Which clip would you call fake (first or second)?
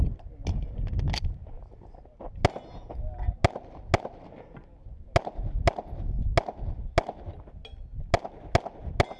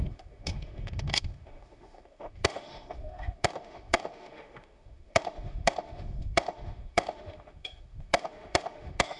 second